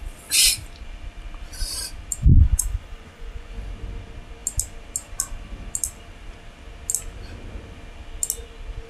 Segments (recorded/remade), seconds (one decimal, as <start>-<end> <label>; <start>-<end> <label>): 0.0-2.3 recorded; 2.3-3.5 remade; 3.5-8.9 recorded